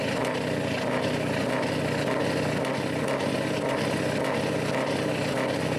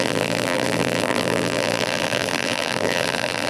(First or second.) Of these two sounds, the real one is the first